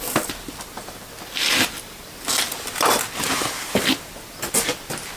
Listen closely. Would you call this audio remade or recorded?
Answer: recorded